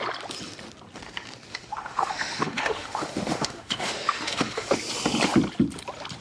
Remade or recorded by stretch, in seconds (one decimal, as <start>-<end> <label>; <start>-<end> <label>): 0.0-1.5 recorded; 1.5-4.8 remade; 4.8-6.2 recorded